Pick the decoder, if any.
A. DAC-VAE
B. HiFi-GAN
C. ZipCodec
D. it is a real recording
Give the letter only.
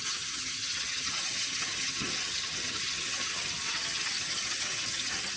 B